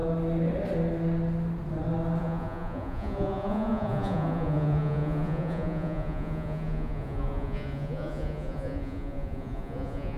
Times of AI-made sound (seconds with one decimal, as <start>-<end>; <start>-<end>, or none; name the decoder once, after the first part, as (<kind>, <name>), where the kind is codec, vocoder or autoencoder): 2.2-10.2 (vocoder, Vocos)